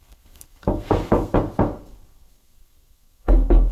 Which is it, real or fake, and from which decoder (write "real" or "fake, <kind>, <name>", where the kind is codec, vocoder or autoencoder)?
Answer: fake, codec, SNAC